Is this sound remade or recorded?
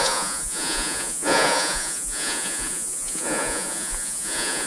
remade